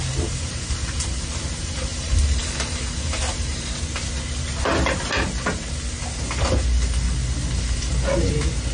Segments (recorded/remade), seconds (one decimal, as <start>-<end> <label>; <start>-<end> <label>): 0.0-1.9 recorded; 1.9-3.7 remade; 3.7-8.7 recorded